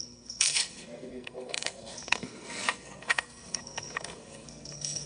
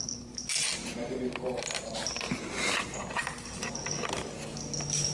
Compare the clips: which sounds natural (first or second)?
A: second